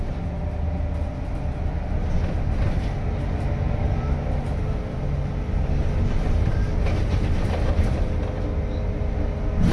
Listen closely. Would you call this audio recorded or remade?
recorded